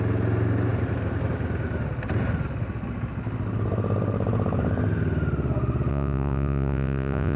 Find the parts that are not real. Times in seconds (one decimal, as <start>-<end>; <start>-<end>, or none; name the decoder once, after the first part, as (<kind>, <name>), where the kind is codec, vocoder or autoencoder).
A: 5.9-7.4 (vocoder, Vocos)